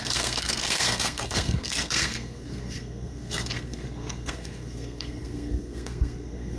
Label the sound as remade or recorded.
remade